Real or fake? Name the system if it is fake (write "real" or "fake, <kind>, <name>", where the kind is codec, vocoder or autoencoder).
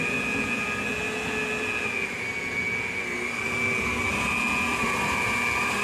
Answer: real